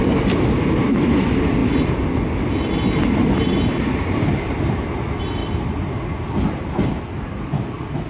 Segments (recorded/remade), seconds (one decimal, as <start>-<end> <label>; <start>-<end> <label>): 0.0-8.1 recorded